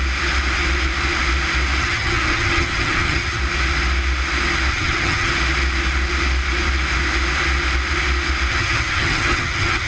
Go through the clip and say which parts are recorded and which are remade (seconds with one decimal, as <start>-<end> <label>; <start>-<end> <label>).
0.0-1.8 recorded; 1.8-3.4 remade; 3.4-4.7 recorded; 4.7-5.3 remade; 5.3-8.5 recorded; 8.5-9.9 remade